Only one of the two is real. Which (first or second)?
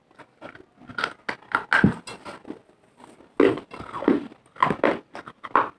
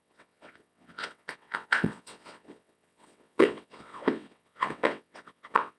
first